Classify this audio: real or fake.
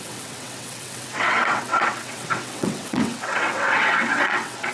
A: fake